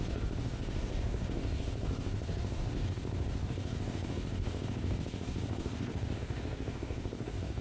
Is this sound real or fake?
fake